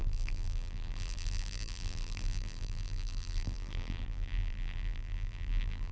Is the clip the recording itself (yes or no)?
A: no